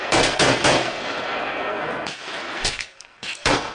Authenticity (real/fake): fake